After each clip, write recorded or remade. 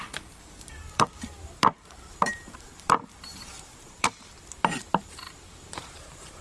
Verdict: remade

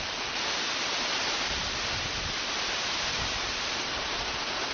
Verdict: remade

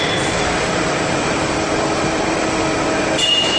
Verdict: remade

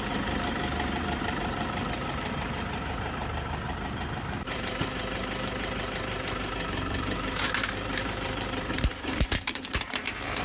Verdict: remade